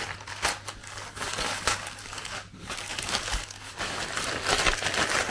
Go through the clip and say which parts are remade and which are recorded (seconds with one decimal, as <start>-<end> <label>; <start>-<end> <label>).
0.0-0.8 recorded; 0.8-4.0 remade; 4.0-5.3 recorded